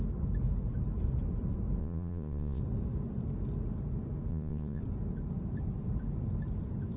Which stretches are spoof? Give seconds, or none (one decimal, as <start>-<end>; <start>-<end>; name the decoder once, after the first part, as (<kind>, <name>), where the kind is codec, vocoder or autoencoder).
1.8-2.6 (vocoder, Vocos); 4.3-4.8